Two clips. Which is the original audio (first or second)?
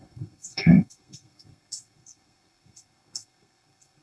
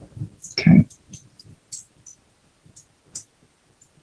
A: second